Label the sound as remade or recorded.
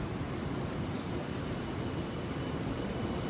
remade